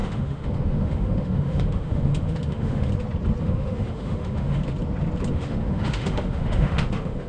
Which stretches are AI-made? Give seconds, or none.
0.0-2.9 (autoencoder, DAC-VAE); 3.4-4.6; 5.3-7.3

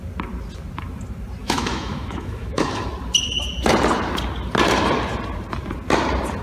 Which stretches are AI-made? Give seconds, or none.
1.4-2.9 (autoencoder, DAC-VAE)